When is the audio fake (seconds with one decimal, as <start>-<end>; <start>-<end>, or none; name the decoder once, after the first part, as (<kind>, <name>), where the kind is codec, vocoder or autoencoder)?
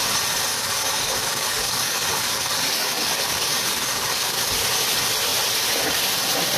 0.5-4.5 (codec, DAC)